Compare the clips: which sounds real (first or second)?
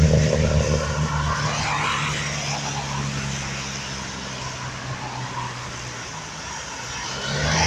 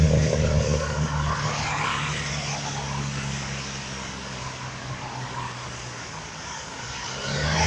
first